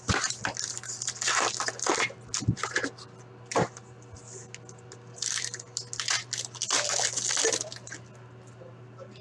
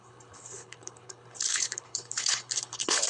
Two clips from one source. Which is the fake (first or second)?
second